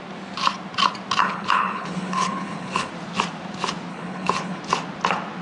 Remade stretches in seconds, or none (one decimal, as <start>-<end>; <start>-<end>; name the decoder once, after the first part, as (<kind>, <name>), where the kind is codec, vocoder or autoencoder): 1.2-2.9 (codec, HILCodec); 3.9-4.6

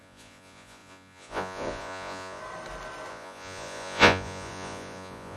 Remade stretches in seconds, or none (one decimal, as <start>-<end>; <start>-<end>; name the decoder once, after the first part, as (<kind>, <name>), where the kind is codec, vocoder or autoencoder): 0.0-2.4 (vocoder, Vocos); 3.1-5.4

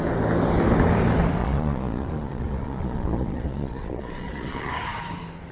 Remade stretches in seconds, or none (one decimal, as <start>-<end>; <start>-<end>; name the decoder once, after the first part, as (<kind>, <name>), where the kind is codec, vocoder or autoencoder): 1.4-4.7 (vocoder, Vocos)